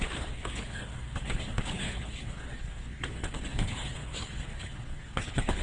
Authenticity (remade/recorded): remade